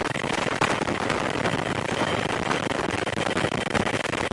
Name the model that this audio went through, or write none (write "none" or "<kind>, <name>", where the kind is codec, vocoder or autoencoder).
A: none